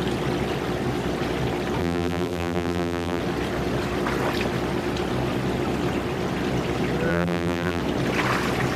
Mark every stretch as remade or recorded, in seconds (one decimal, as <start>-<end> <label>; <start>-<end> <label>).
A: 0.0-1.8 recorded; 1.8-3.2 remade; 3.2-7.1 recorded; 7.1-7.8 remade; 7.8-8.8 recorded